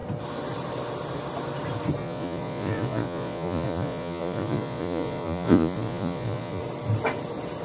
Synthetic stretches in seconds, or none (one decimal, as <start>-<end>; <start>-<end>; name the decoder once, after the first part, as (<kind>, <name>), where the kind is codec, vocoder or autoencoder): 2.0-6.6 (vocoder, Vocos)